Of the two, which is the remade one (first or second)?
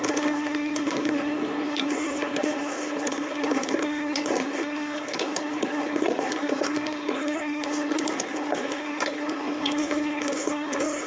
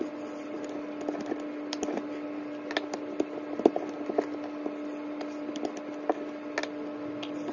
first